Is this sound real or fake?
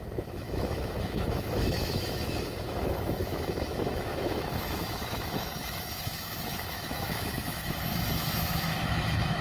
fake